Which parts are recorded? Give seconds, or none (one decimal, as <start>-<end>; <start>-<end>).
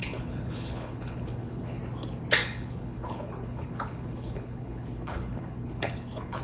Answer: 1.8-2.4